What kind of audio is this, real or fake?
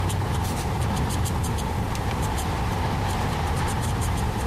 fake